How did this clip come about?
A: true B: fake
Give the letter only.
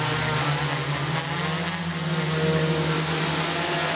A